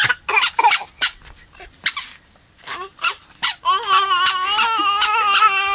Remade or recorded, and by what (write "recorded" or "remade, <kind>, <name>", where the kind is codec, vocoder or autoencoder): recorded